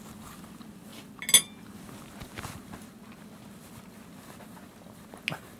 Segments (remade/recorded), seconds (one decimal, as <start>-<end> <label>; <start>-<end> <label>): 0.0-5.6 recorded